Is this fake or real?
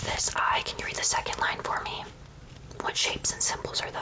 real